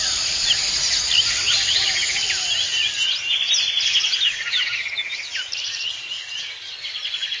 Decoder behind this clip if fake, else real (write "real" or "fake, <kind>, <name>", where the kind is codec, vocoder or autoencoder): real